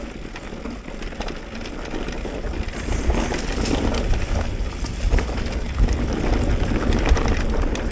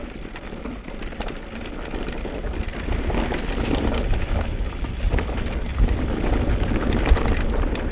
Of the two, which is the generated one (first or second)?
second